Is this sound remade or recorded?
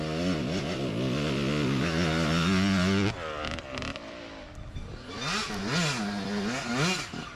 recorded